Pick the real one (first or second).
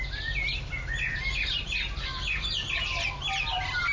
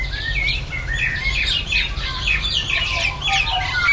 first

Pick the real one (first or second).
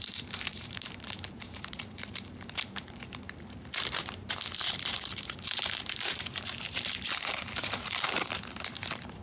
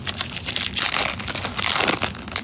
second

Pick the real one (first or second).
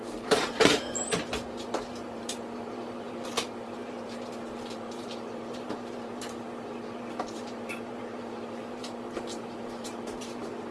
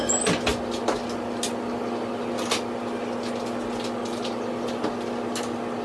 second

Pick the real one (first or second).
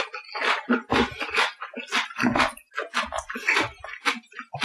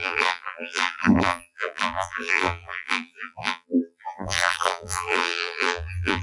first